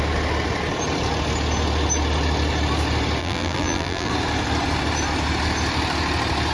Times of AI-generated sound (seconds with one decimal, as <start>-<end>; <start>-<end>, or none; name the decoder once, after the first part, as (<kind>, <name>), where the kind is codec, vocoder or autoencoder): 3.2-4.1 (vocoder, BigVGAN v2)